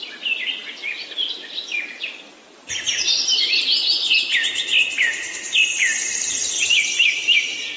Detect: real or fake fake